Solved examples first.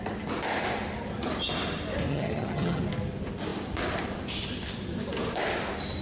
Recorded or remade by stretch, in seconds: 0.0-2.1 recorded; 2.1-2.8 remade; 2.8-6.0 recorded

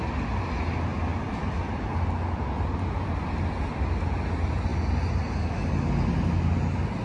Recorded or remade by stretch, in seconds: 0.0-7.0 recorded

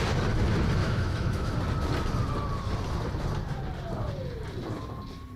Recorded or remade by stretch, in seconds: 0.0-0.8 recorded; 0.8-1.5 remade; 1.5-5.4 recorded

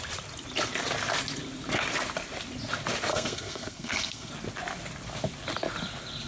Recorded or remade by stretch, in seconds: 0.0-3.1 recorded; 3.1-4.3 remade; 4.3-6.3 recorded

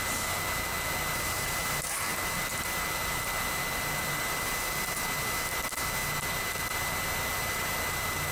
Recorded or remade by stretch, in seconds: 0.0-8.3 recorded

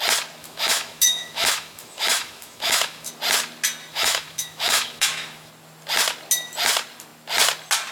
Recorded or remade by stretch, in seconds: 0.0-0.4 recorded; 0.4-3.1 remade; 3.1-3.9 recorded; 3.9-5.5 remade; 5.5-7.9 recorded